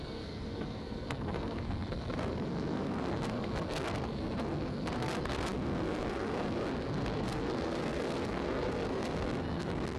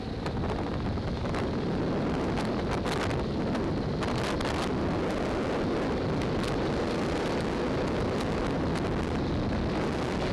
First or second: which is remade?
first